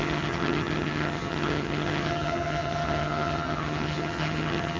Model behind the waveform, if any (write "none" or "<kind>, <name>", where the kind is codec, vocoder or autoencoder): vocoder, HiFi-GAN